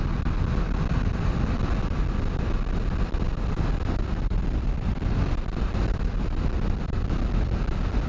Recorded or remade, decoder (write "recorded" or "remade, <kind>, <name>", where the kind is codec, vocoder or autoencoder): recorded